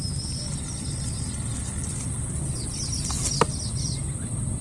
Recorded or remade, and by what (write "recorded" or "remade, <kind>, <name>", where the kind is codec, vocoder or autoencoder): recorded